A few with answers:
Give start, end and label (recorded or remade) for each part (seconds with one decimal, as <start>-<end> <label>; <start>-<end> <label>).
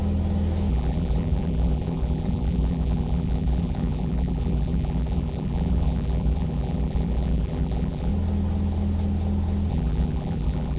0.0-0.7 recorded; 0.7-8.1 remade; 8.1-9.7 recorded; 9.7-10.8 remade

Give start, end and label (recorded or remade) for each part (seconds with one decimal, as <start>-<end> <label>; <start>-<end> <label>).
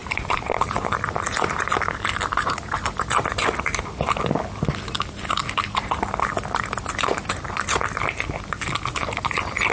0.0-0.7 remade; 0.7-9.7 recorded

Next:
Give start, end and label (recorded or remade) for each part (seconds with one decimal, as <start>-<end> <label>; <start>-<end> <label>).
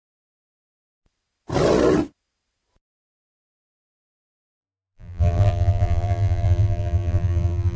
0.0-3.3 recorded; 3.3-7.8 remade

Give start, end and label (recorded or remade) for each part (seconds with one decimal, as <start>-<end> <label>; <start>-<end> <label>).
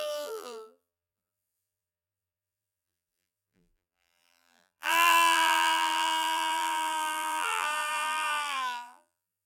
0.0-9.5 remade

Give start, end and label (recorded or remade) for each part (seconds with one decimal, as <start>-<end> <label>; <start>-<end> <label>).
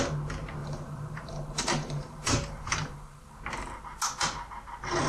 0.0-0.6 recorded; 0.6-3.4 remade; 3.4-5.1 recorded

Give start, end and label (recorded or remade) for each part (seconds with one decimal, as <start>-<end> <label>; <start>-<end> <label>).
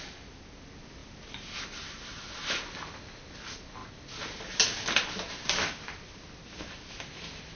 0.0-7.6 recorded